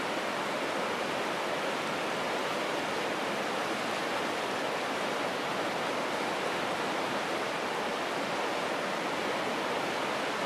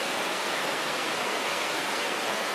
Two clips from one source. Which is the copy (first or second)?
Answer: second